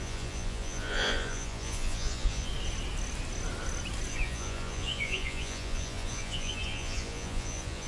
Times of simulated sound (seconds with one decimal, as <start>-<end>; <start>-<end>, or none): 0.0-2.5; 4.1-7.9